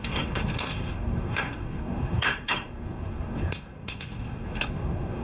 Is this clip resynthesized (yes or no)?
yes